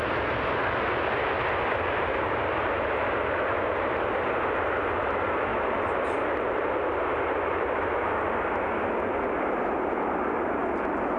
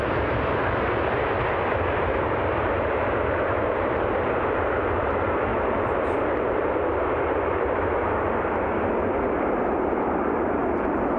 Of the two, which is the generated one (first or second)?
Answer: second